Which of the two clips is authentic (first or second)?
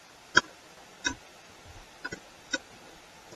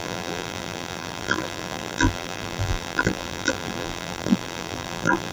first